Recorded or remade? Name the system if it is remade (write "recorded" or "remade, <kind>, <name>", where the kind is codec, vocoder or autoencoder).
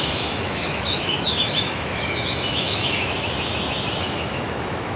remade, autoencoder, DAC-VAE